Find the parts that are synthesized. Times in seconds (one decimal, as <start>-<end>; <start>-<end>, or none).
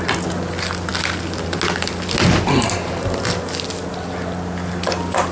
none